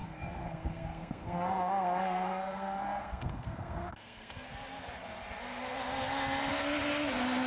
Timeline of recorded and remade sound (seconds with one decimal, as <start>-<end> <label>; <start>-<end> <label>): 0.0-4.5 remade; 4.5-7.5 recorded